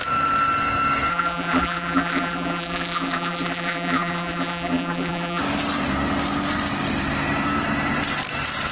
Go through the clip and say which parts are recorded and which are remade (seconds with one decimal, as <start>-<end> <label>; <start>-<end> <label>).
0.0-1.1 recorded; 1.1-5.4 remade; 5.4-8.7 recorded